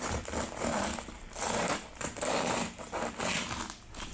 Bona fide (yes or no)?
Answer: no